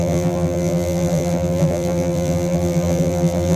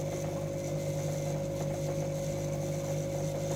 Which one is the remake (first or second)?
first